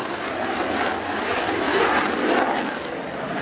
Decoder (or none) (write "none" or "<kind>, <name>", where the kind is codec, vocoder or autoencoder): none